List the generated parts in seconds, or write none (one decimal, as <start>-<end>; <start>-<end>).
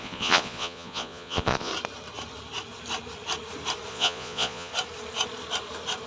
0.0-1.7; 3.9-4.7